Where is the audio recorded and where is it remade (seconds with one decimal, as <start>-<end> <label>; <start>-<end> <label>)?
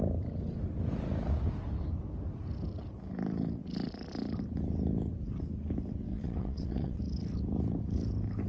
0.0-6.1 recorded; 6.1-7.0 remade; 7.0-8.5 recorded